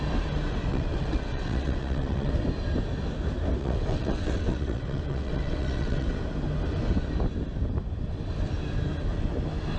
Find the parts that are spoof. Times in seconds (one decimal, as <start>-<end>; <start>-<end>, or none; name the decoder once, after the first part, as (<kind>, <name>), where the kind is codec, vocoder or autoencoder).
0.7-2.3 (vocoder, WaveNeXt); 3.6-6.2